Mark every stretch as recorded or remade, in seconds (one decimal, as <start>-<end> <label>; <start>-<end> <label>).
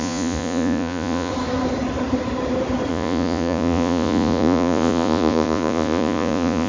0.0-1.3 remade; 1.3-2.9 recorded; 2.9-6.7 remade